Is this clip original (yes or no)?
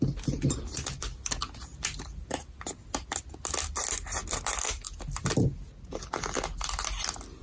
yes